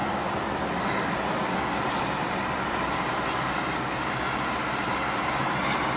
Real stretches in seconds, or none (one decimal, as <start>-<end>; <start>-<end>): 0.0-6.0